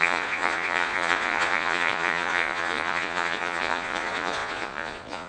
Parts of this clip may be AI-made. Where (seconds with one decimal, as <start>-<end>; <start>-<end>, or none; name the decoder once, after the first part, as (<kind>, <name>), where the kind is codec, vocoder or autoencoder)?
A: 0.0-5.3 (vocoder, Vocos)